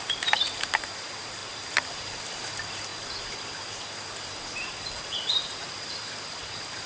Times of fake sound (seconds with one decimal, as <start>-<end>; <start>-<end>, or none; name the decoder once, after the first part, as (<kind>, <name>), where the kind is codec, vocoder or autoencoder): 0.0-2.9 (vocoder, BigVGAN v2); 5.1-6.9